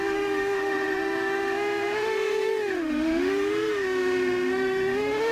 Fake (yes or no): yes